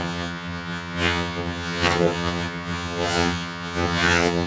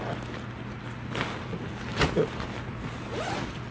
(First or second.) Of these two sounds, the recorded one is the second